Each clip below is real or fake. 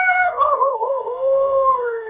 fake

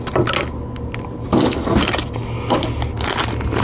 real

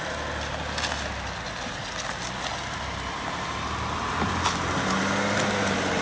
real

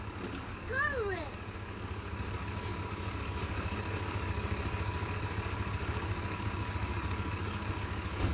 fake